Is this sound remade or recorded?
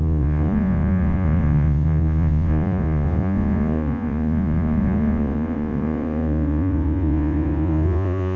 remade